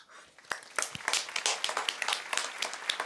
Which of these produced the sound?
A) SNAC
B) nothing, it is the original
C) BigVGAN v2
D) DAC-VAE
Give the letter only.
B